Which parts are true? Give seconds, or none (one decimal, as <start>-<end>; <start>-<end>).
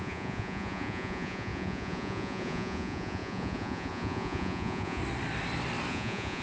5.0-5.9